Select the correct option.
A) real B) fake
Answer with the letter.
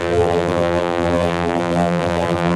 B